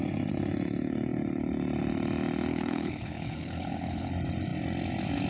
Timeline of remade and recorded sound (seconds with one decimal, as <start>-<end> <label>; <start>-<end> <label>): 0.0-2.5 recorded; 2.5-4.1 remade; 4.1-5.3 recorded